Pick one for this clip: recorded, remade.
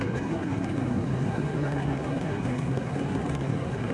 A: remade